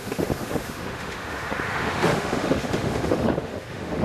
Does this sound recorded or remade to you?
remade